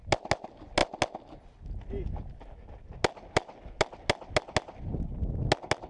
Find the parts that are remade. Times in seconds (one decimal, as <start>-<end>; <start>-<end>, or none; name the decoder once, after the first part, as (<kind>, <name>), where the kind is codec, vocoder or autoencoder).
none

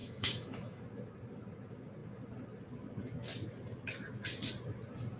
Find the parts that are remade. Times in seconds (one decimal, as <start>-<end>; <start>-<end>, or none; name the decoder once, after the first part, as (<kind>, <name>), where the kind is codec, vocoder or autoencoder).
0.0-0.8 (autoencoder, DAC-VAE)